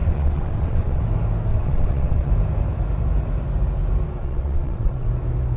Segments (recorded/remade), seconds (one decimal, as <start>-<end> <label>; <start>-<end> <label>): 0.0-1.0 remade; 1.0-1.5 recorded; 1.5-2.3 remade; 2.3-4.2 recorded; 4.2-5.1 remade; 5.1-5.6 recorded